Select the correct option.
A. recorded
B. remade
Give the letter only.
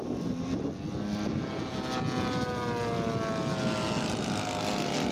A